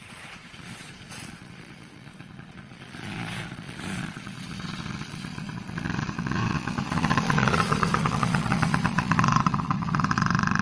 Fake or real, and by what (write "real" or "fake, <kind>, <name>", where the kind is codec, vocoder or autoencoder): fake, vocoder, Vocos